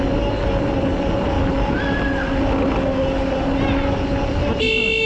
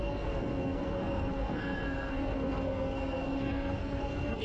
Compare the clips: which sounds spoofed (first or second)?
second